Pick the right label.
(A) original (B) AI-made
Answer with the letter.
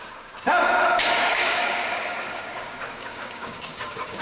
B